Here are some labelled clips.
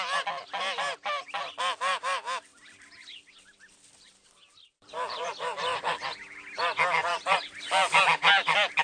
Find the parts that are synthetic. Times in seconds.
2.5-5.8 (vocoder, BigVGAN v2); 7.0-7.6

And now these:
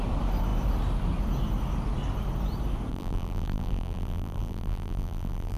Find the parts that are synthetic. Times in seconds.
2.9-5.6 (vocoder, BigVGAN v2)

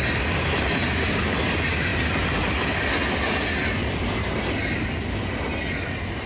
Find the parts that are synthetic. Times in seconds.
1.9-2.9 (vocoder, BigVGAN v2); 3.8-4.3

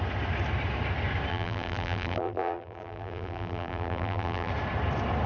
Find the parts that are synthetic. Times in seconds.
1.3-4.5 (vocoder, BigVGAN v2)